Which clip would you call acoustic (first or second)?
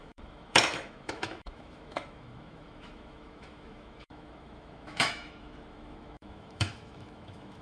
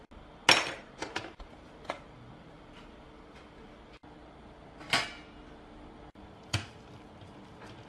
second